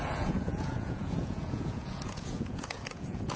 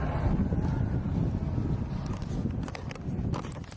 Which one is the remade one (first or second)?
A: first